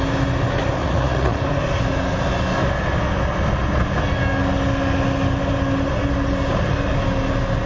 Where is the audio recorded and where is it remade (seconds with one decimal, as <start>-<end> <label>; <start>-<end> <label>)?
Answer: 0.0-0.8 recorded; 0.8-1.4 remade; 1.4-7.7 recorded